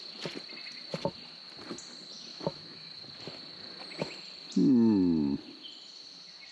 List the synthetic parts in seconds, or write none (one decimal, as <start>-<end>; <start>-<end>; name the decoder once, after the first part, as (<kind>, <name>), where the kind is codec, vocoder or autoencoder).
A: 2.3-3.0 (autoencoder, DAC-VAE)